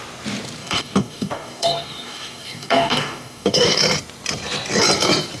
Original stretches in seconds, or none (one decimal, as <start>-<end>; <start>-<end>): 0.0-0.6; 3.8-5.4